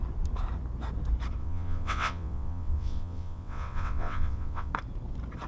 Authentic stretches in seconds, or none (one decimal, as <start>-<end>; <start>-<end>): 0.0-1.4; 4.7-5.5